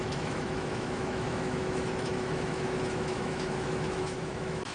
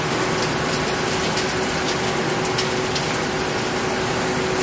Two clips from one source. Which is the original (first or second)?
second